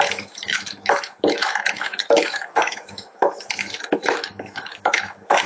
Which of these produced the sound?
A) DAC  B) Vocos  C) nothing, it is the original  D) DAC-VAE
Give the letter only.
D